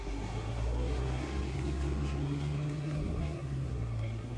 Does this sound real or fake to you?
fake